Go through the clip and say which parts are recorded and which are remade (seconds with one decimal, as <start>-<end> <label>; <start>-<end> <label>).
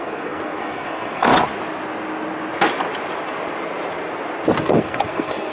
0.0-1.3 remade; 1.3-4.6 recorded; 4.6-5.5 remade